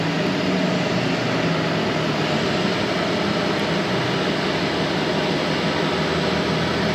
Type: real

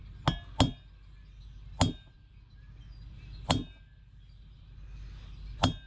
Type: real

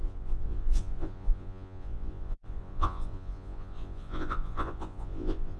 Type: fake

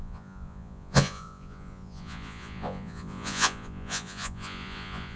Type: fake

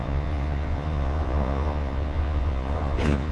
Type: fake